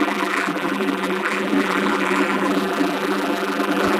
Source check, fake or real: fake